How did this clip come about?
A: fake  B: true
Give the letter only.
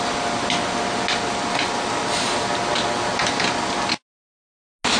B